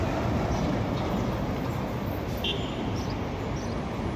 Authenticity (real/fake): real